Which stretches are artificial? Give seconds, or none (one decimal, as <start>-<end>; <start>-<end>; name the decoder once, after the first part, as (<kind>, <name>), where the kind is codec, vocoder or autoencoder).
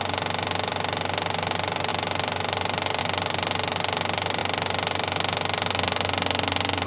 none